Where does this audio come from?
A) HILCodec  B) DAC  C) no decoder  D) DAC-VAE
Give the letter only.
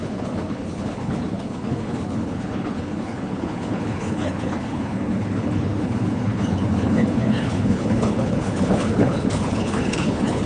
A